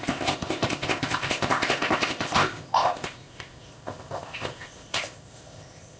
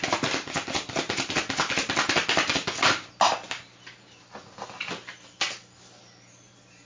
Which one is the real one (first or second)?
second